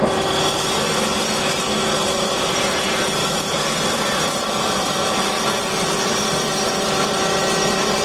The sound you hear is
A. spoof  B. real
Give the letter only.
B